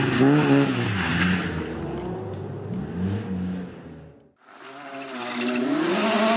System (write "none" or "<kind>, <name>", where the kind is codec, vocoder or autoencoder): none